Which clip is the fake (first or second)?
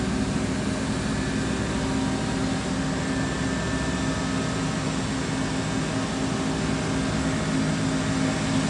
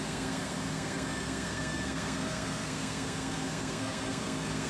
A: second